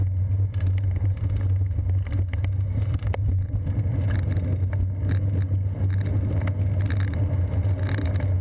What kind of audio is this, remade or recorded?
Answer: recorded